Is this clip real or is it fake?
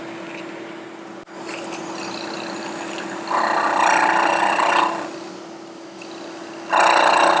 real